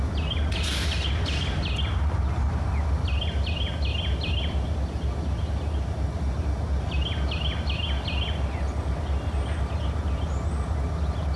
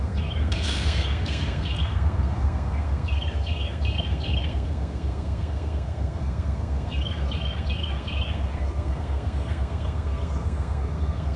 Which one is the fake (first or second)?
second